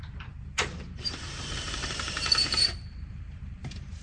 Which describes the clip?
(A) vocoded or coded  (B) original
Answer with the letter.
A